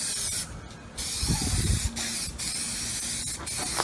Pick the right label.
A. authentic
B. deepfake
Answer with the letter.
A